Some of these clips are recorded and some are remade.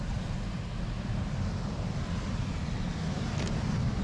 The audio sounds recorded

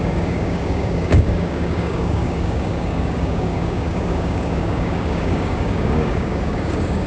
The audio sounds remade